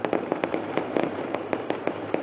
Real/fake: fake